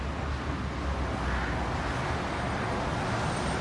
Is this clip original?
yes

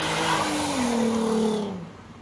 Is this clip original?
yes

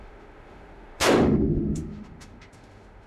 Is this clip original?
no